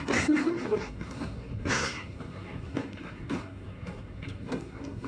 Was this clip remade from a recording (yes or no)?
yes